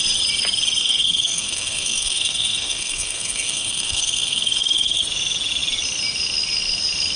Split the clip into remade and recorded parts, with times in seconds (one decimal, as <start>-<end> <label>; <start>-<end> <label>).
0.0-0.8 recorded; 0.8-5.0 remade; 5.0-7.2 recorded